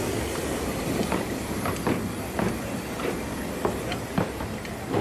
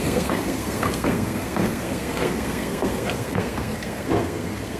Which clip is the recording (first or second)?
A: first